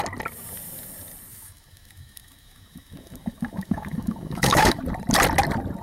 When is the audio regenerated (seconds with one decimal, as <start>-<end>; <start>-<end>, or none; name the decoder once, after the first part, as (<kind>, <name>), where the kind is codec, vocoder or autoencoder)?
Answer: 1.3-4.8 (autoencoder, DAC-VAE)